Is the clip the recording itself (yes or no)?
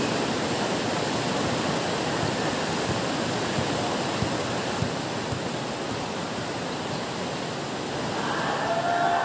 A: yes